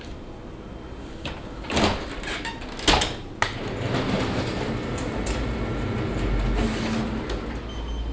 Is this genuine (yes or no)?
yes